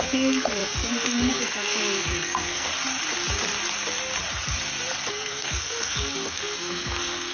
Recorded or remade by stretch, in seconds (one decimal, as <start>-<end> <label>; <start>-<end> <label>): 0.0-2.7 remade; 2.7-5.1 recorded; 5.1-7.3 remade